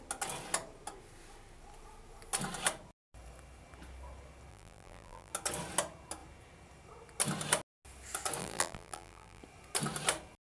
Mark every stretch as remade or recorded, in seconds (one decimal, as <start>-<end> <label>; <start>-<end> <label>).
0.0-4.5 recorded; 4.5-5.3 remade; 5.3-8.4 recorded; 8.4-9.4 remade; 9.4-10.6 recorded